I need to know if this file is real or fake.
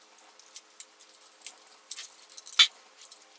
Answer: real